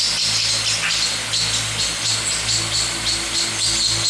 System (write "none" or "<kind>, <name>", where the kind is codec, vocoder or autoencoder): none